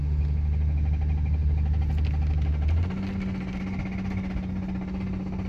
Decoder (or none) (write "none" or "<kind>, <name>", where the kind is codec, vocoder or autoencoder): none